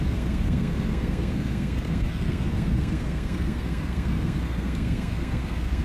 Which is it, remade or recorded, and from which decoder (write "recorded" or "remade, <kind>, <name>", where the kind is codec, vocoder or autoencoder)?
remade, codec, SNAC